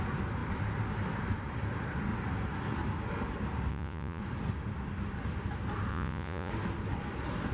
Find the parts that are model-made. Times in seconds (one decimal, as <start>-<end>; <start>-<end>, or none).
3.7-4.2; 5.9-6.5